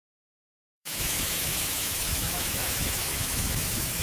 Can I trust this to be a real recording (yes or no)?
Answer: no